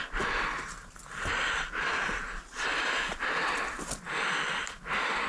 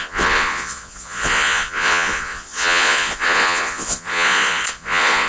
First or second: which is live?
first